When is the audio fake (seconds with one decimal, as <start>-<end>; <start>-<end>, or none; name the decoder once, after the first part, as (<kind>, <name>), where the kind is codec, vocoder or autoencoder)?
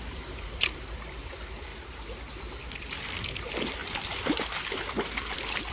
0.0-1.7 (vocoder, BigVGAN v2); 2.7-5.7